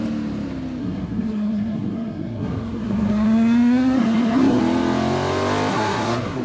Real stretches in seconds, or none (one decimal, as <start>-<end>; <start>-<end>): 0.0-0.8; 4.6-5.7